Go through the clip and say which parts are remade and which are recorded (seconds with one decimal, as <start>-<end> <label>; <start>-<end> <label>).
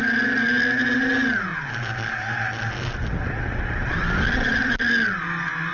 0.0-5.7 recorded